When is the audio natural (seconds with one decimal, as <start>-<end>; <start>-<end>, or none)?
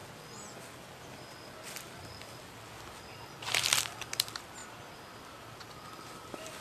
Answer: 0.0-6.6